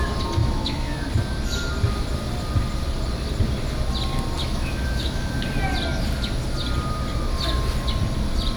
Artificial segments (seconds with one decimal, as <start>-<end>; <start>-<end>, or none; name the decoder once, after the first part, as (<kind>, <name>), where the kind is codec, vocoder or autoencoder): 0.4-1.1 (autoencoder, DAC-VAE); 4.4-5.3